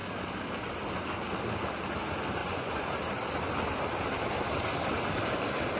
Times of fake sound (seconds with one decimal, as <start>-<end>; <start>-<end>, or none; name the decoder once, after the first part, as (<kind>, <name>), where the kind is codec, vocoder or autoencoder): 2.4-2.9 (vocoder, Vocos)